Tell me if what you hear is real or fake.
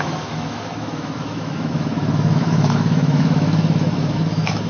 fake